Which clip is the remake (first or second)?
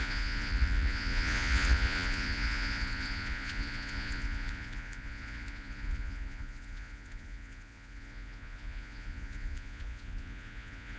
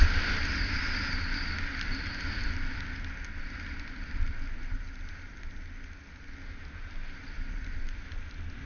first